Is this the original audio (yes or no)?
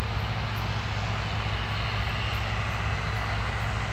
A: yes